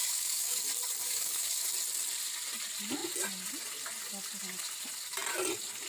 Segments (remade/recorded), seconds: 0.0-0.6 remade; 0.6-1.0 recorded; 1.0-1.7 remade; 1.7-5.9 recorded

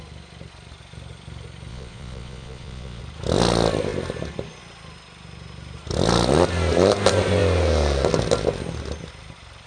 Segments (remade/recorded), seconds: 0.0-1.7 recorded; 1.7-3.0 remade; 3.0-9.7 recorded